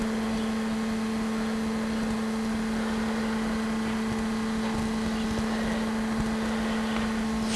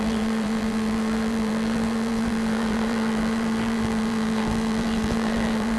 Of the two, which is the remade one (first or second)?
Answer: second